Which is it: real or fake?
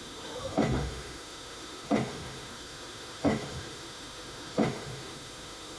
fake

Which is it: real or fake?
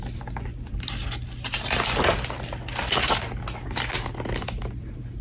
real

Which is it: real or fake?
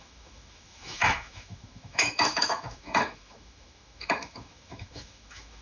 fake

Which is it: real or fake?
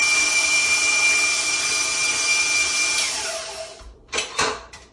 real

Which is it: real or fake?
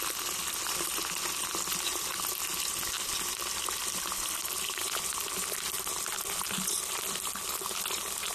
real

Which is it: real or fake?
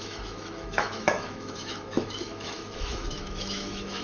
fake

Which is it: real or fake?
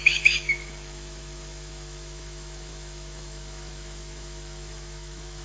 fake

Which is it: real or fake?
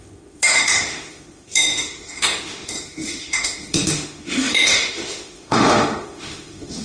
fake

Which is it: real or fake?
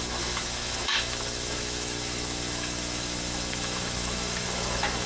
fake